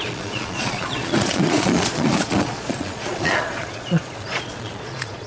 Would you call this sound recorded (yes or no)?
no